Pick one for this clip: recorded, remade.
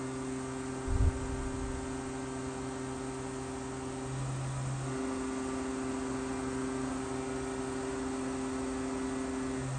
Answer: recorded